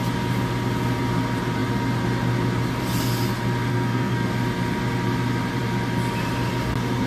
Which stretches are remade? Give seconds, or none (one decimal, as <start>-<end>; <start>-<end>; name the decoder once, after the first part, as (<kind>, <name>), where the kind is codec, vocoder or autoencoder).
3.7-4.3 (codec, SNAC)